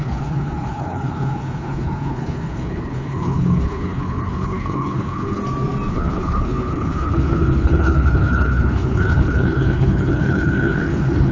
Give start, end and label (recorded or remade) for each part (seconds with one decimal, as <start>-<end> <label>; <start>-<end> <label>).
0.0-5.4 remade; 5.4-5.9 recorded; 5.9-11.3 remade